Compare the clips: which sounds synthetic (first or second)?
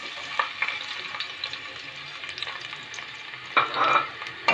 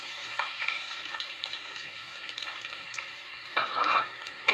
second